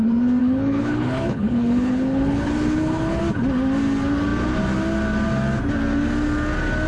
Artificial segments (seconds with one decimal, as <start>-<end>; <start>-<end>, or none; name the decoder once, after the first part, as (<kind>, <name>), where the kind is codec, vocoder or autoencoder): 0.4-3.2 (codec, HILCodec)